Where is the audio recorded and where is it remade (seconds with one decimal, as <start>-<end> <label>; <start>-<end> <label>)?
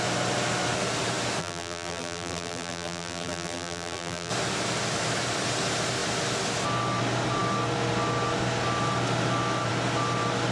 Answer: 0.0-1.4 recorded; 1.4-4.3 remade; 4.3-10.5 recorded